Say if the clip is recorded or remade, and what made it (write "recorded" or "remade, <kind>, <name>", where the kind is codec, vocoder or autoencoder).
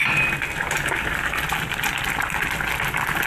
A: recorded